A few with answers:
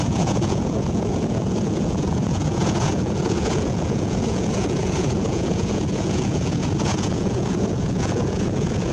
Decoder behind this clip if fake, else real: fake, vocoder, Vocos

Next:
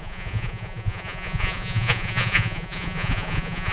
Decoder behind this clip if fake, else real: fake, vocoder, Vocos